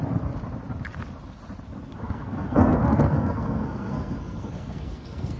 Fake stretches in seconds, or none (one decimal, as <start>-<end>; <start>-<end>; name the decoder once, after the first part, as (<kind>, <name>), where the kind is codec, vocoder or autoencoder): 1.9-5.4 (codec, SNAC)